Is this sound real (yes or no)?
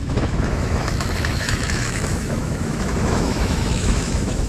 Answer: no